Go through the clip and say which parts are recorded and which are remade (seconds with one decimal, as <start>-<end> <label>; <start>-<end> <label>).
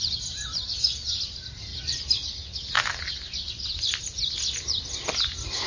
0.0-1.7 remade; 1.7-5.1 recorded; 5.1-5.7 remade